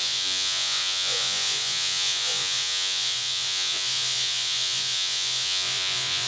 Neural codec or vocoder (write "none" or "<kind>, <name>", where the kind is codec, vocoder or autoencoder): vocoder, Vocos